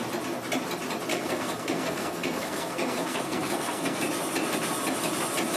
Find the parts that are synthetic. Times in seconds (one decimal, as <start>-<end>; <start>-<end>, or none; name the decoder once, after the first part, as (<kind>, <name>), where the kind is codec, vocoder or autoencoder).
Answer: 1.1-4.0 (codec, SNAC)